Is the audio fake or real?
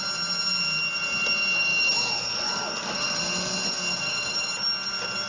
real